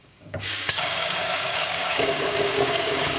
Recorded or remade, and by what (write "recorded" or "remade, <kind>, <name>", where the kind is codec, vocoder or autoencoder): remade, codec, DAC